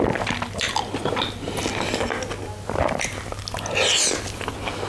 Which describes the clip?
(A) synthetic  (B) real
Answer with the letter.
B